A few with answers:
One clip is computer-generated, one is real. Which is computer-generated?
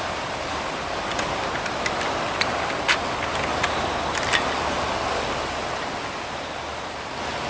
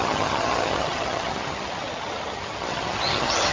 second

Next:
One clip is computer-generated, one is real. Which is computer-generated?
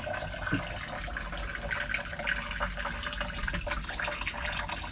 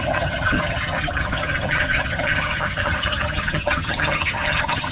second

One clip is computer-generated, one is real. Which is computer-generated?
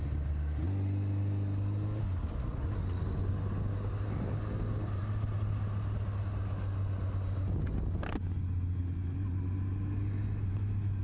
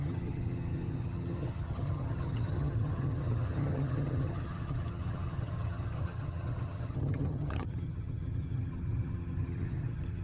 second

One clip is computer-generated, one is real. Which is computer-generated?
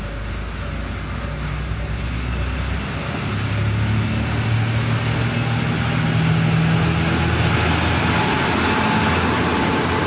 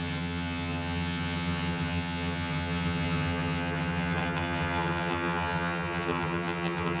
second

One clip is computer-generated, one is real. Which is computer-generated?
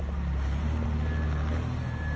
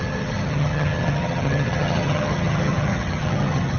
second